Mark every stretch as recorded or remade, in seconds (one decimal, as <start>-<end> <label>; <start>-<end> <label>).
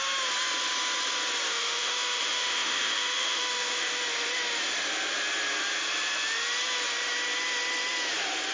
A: 0.0-1.5 recorded; 1.5-4.0 remade; 4.0-8.5 recorded